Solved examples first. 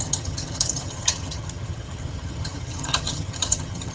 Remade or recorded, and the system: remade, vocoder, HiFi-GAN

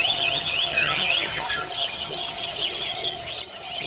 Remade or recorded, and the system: remade, vocoder, HiFi-GAN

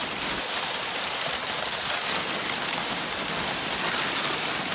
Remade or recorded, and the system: recorded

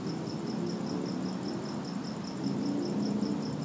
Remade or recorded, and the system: recorded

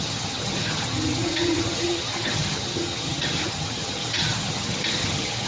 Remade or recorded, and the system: remade, vocoder, HiFi-GAN